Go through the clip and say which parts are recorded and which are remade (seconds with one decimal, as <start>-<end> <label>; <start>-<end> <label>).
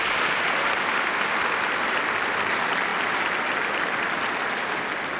0.0-2.9 remade; 2.9-4.2 recorded; 4.2-5.2 remade